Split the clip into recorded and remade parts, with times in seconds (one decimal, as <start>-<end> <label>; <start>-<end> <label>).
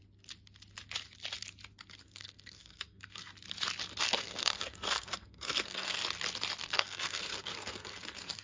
0.0-2.0 recorded; 2.0-3.3 remade; 3.3-4.0 recorded; 4.0-6.0 remade; 6.0-6.6 recorded; 6.6-8.4 remade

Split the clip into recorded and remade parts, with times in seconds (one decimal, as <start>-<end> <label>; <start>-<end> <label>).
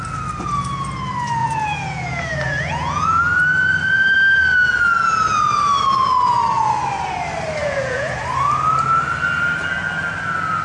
0.0-1.4 recorded; 1.4-3.4 remade; 3.4-7.6 recorded; 7.6-8.2 remade; 8.2-10.6 recorded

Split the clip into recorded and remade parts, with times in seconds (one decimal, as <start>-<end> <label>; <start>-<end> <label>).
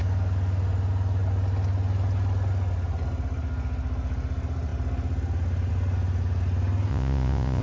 0.0-6.9 recorded; 6.9-7.6 remade